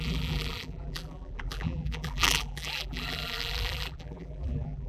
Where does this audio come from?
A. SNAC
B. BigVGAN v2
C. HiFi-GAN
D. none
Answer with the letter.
B